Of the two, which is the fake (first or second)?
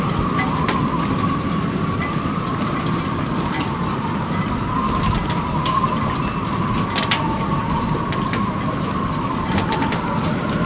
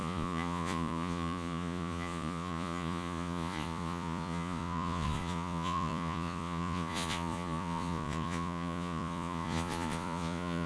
second